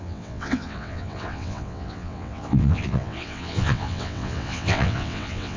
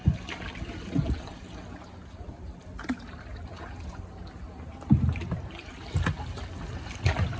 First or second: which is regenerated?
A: first